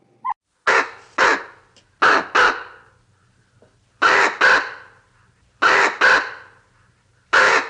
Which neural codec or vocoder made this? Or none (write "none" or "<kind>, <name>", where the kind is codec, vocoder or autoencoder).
none